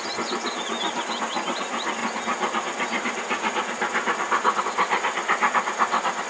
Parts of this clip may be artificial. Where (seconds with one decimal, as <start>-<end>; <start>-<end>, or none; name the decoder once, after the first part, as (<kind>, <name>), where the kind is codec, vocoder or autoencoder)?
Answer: none